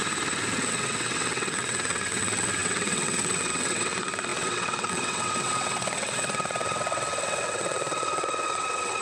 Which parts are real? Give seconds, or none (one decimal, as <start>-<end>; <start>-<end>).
0.0-0.5